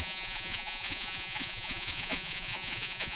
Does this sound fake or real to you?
fake